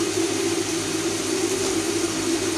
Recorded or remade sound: recorded